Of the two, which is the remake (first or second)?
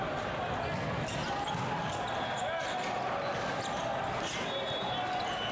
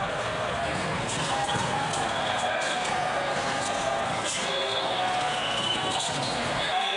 second